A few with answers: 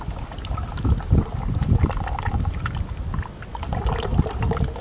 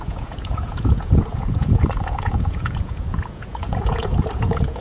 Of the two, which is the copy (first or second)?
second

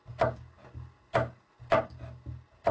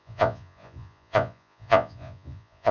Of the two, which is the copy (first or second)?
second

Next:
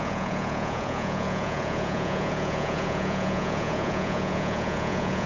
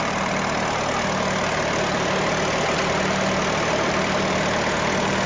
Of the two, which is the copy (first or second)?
first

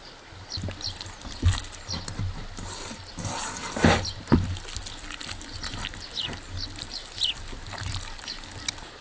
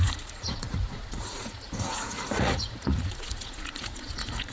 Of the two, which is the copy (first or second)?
second